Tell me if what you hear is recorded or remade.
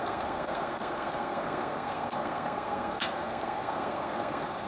remade